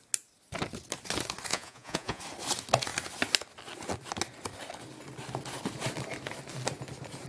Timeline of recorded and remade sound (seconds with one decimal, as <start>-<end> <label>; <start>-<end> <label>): 0.0-1.5 recorded; 1.5-2.2 remade; 2.2-7.3 recorded